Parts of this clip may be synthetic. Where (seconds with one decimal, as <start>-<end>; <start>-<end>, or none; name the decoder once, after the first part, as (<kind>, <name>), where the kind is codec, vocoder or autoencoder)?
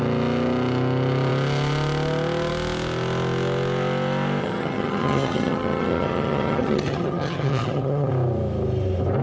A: 4.4-8.1 (vocoder, HiFi-GAN)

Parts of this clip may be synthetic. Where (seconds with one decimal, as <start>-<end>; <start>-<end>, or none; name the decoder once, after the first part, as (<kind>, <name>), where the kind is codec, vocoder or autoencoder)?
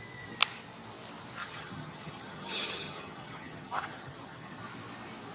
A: 1.4-4.6 (vocoder, HiFi-GAN)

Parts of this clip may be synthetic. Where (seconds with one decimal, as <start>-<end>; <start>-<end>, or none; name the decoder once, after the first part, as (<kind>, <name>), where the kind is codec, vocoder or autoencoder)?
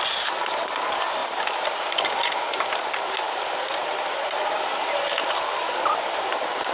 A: none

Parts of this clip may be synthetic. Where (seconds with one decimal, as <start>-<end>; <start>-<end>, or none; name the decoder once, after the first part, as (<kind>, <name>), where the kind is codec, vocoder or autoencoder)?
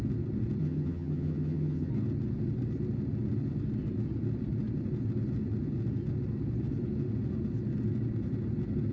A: 0.6-1.9 (vocoder, HiFi-GAN)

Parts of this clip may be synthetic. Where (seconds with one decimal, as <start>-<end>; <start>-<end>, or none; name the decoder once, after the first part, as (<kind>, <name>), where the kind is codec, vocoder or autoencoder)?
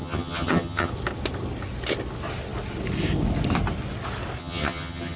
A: 0.0-0.9 (vocoder, HiFi-GAN); 4.4-5.2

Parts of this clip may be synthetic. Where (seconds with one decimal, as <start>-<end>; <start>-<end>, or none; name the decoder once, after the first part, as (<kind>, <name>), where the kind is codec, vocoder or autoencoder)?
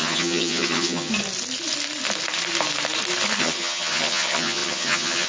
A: 0.0-1.1 (vocoder, HiFi-GAN); 3.4-5.3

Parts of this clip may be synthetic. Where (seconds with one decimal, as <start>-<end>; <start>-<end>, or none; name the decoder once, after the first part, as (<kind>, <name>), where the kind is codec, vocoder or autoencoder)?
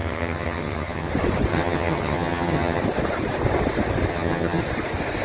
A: 0.0-1.1 (vocoder, HiFi-GAN); 1.5-2.8; 4.1-4.6